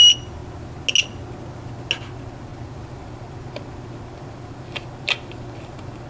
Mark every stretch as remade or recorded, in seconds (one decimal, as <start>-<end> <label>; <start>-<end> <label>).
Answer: 0.0-2.5 recorded; 2.5-6.1 remade

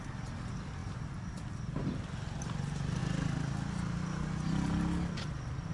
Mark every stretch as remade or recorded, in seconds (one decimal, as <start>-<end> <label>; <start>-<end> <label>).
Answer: 0.0-0.8 recorded; 0.8-2.4 remade; 2.4-5.7 recorded

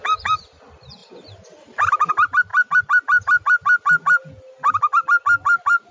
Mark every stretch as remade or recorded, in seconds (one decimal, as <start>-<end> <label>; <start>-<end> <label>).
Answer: 0.0-5.9 recorded

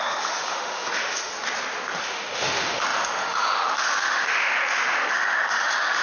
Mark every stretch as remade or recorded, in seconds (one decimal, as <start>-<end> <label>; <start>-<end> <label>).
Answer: 0.0-1.3 remade; 1.3-2.0 recorded; 2.0-6.0 remade

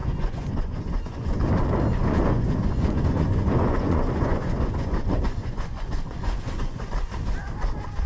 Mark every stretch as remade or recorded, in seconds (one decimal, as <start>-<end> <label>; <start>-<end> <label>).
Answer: 0.0-1.4 remade; 1.4-2.0 recorded; 2.0-6.9 remade; 6.9-8.1 recorded

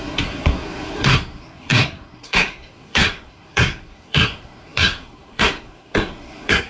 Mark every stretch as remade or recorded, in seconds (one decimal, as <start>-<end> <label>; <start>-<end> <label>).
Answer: 0.0-6.7 remade

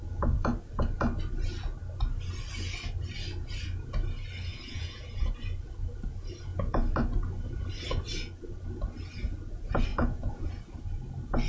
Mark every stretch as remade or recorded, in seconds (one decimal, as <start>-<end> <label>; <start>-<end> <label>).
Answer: 0.0-4.5 recorded; 4.5-5.3 remade; 5.3-9.9 recorded; 9.9-10.5 remade; 10.5-11.5 recorded